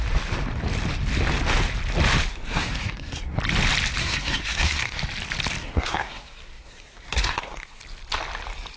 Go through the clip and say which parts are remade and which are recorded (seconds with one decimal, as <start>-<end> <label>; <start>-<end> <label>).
0.0-2.3 recorded; 2.3-3.4 remade; 3.4-4.0 recorded; 4.0-5.0 remade; 5.0-5.6 recorded; 5.6-7.8 remade; 7.8-8.8 recorded